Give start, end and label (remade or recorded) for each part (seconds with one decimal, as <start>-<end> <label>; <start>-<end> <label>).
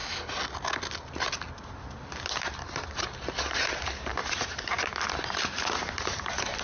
0.0-3.0 recorded; 3.0-6.6 remade